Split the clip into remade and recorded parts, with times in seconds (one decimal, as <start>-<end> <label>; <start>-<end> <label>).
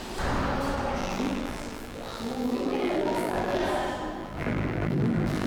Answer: 0.0-1.0 recorded; 1.0-3.6 remade; 3.6-4.2 recorded; 4.2-5.5 remade